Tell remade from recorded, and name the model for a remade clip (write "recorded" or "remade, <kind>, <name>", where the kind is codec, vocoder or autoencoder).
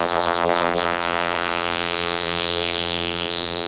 remade, vocoder, BigVGAN v2